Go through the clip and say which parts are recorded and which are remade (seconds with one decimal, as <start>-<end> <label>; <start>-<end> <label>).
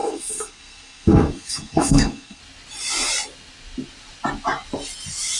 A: 0.0-2.4 remade; 2.4-5.4 recorded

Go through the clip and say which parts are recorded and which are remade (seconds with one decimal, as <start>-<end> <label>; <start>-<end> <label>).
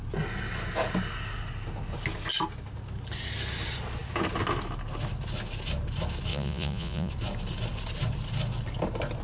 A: 0.0-6.3 recorded; 6.3-7.1 remade; 7.1-9.2 recorded